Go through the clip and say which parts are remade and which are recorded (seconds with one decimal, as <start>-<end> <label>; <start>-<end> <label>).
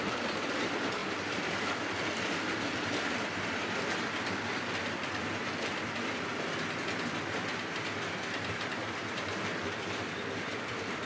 0.0-6.3 remade; 6.3-9.1 recorded; 9.1-11.1 remade